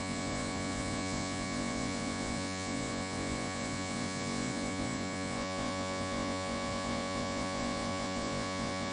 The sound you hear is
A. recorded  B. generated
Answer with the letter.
B